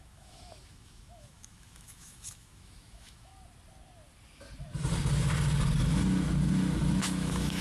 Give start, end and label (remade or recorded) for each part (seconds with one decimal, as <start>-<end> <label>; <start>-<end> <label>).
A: 0.0-3.3 remade; 3.3-7.0 recorded; 7.0-7.6 remade